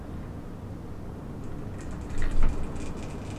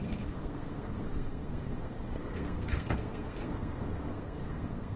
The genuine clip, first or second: first